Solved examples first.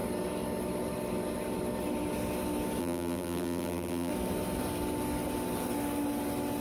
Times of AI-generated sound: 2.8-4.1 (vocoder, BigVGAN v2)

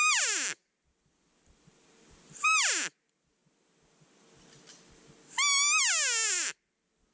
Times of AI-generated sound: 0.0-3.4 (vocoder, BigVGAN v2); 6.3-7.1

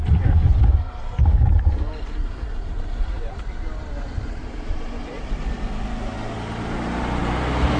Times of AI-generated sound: 2.2-3.3 (vocoder, BigVGAN v2); 4.4-5.4; 7.2-7.8

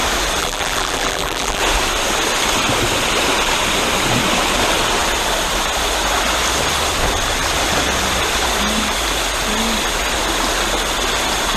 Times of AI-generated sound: 0.4-1.6 (vocoder, BigVGAN v2)